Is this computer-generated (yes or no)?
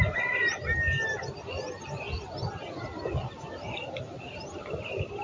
no